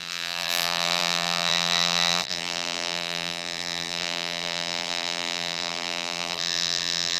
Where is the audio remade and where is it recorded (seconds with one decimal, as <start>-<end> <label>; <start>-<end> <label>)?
0.0-7.2 remade